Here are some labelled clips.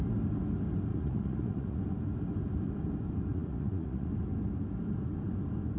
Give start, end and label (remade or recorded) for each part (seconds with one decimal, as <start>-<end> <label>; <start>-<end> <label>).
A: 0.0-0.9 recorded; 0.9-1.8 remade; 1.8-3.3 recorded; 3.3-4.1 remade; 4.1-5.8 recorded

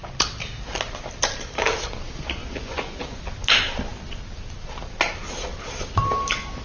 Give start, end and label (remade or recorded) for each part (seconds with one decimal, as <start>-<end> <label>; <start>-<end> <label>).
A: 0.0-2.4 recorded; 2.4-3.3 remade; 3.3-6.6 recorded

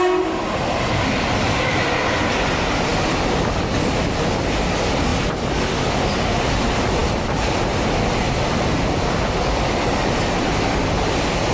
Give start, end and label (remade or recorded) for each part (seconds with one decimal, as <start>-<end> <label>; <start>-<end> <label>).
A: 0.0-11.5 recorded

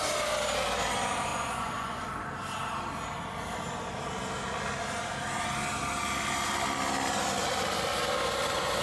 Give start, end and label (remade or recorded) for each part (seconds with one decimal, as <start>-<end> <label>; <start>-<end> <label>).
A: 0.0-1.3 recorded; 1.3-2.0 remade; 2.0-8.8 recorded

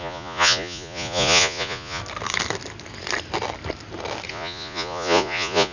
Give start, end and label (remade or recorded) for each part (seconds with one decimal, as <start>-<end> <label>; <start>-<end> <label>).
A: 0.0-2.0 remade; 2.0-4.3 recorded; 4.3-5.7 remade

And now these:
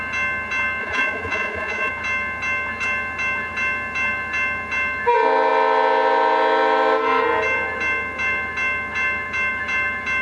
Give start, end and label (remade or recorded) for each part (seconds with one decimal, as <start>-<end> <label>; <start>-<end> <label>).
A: 0.0-0.8 recorded; 0.8-1.9 remade; 1.9-10.2 recorded

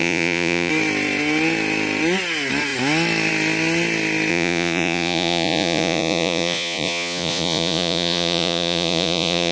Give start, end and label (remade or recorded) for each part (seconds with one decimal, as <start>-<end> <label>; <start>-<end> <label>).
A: 0.0-0.7 remade; 0.7-4.3 recorded; 4.3-9.5 remade